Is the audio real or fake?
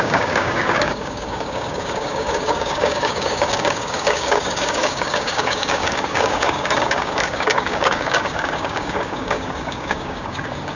fake